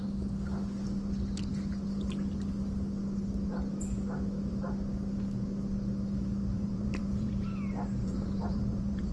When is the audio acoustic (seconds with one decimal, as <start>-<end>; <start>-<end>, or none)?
0.0-6.5; 7.3-8.0